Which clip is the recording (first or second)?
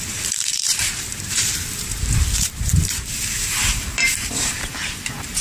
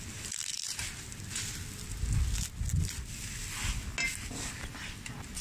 second